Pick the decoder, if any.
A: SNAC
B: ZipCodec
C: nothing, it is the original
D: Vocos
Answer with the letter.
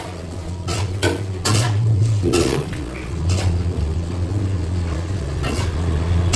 D